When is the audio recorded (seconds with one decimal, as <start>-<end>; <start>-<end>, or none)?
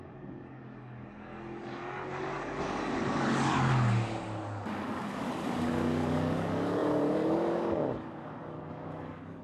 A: none